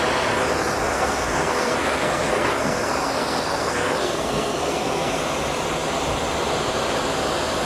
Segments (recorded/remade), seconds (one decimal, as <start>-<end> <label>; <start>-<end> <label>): 0.0-0.9 recorded; 0.9-5.2 remade; 5.2-7.7 recorded